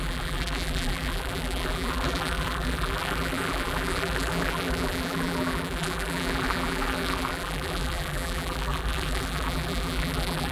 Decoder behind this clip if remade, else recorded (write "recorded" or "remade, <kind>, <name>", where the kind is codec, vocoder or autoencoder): remade, vocoder, BigVGAN v2